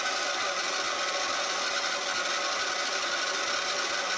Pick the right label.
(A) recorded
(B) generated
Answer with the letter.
A